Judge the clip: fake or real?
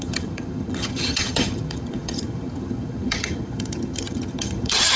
fake